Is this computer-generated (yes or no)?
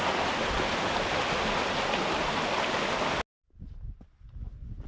no